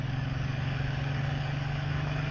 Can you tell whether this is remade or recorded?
remade